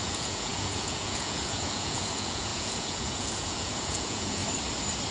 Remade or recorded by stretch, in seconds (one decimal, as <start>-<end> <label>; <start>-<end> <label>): 0.0-4.4 remade; 4.4-5.1 recorded